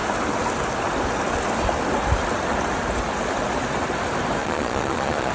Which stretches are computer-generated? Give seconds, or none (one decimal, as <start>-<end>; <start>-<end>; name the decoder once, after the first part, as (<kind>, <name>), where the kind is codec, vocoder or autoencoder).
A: 4.4-5.3 (vocoder, Vocos)